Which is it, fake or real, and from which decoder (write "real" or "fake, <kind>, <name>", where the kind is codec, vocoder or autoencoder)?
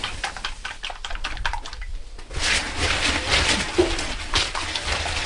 real